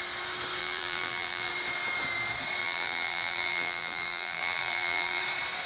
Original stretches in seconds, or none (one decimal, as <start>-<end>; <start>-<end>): 0.0-0.6; 1.5-2.6; 5.2-5.7